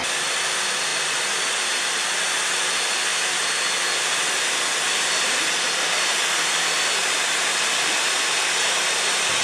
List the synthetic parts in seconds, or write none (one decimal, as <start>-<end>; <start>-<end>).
0.9-1.6; 3.1-3.8; 7.0-8.4